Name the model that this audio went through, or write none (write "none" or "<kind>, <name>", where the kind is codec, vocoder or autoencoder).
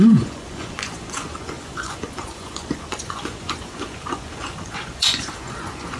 vocoder, Vocos